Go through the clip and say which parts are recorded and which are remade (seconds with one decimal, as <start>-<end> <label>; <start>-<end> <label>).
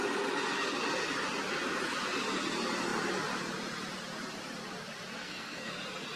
0.0-5.2 recorded; 5.2-5.7 remade; 5.7-6.2 recorded